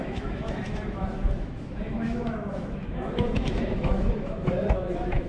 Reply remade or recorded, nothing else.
remade